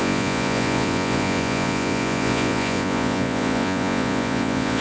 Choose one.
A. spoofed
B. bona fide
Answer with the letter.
A